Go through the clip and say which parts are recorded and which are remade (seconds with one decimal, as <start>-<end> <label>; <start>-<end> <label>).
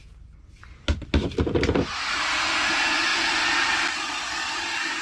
0.0-2.2 remade; 2.2-3.1 recorded; 3.1-3.9 remade; 3.9-5.0 recorded